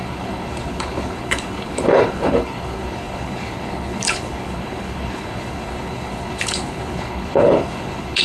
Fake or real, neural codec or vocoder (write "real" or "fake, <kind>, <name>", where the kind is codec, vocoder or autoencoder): fake, codec, HILCodec